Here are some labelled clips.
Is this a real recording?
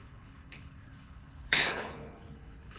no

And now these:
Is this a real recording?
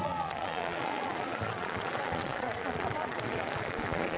no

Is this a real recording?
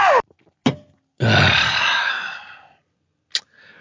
yes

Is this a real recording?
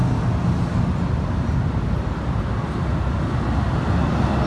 yes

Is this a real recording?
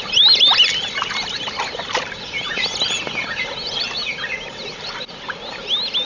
yes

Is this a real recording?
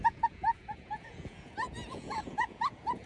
no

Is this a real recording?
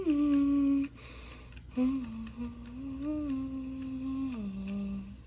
yes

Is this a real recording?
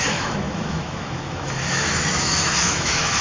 no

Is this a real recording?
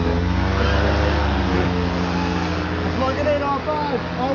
yes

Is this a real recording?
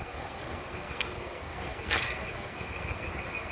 no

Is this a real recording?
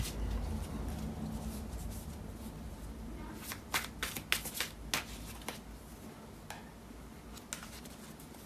yes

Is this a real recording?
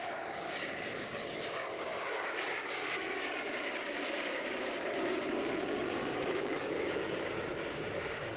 no